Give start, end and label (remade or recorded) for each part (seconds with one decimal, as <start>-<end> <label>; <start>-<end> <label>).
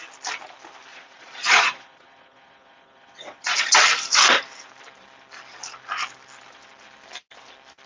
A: 0.0-0.9 recorded; 0.9-3.8 remade; 3.8-7.9 recorded